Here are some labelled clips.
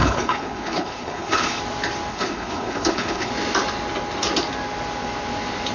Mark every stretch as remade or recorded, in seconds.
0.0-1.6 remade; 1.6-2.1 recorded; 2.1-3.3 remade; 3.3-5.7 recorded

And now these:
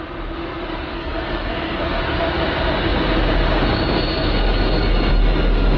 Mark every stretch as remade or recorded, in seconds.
0.0-0.9 recorded; 0.9-2.0 remade; 2.0-5.8 recorded

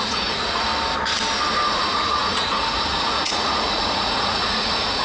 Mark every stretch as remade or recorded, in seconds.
0.0-0.7 remade; 0.7-1.7 recorded; 1.7-5.0 remade

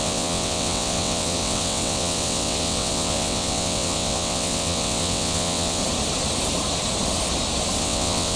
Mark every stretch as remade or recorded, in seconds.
0.0-5.8 remade; 5.8-7.8 recorded; 7.8-8.4 remade

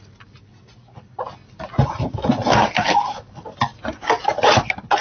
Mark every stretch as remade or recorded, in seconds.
0.0-5.0 recorded

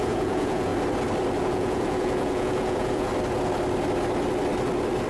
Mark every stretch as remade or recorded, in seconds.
0.0-0.7 remade; 0.7-1.4 recorded; 1.4-3.1 remade; 3.1-5.1 recorded

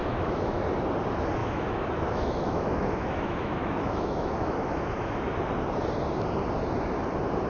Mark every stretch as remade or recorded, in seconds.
0.0-0.6 remade; 0.6-1.4 recorded; 1.4-5.3 remade; 5.3-7.5 recorded

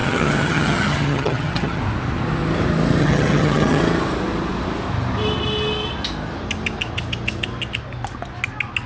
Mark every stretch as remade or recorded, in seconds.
0.0-1.8 remade; 1.8-3.0 recorded; 3.0-3.8 remade; 3.8-8.9 recorded